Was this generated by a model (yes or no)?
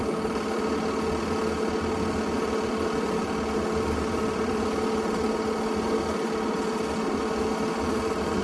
no